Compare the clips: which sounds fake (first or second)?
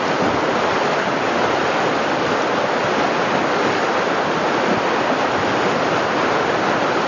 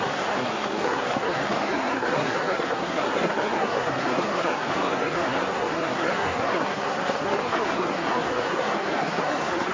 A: second